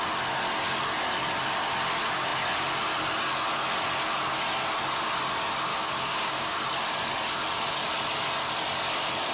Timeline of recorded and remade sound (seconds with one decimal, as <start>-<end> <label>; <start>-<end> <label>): 0.0-5.7 recorded; 5.7-6.6 remade; 6.6-9.3 recorded